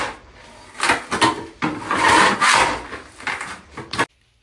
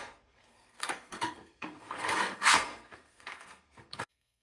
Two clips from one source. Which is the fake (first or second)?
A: second